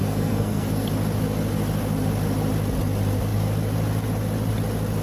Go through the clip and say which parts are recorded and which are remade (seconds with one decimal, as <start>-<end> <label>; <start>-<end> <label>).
0.0-0.9 remade; 0.9-5.0 recorded